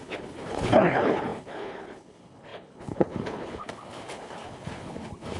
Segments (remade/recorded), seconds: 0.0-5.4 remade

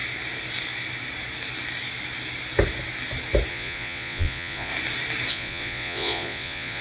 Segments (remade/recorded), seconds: 0.0-3.5 recorded; 3.5-4.7 remade; 4.7-5.3 recorded; 5.3-6.8 remade

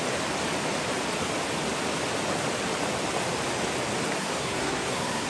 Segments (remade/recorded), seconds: 0.0-4.2 recorded; 4.2-5.3 remade

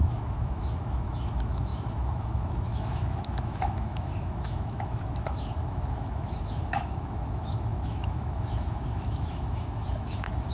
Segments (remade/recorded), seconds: 0.0-10.5 remade

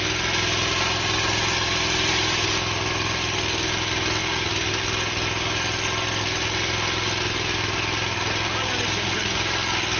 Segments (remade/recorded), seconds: 0.0-10.0 recorded